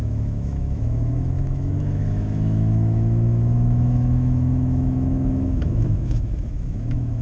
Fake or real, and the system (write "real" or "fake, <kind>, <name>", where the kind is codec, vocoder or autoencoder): fake, autoencoder, DAC-VAE